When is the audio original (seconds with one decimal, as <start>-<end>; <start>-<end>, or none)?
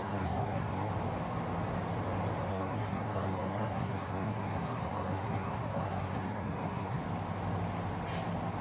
0.9-2.5; 7.0-8.6